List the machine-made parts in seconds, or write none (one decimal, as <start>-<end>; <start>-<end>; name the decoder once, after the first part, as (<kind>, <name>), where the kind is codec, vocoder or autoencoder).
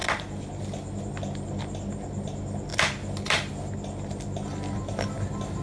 none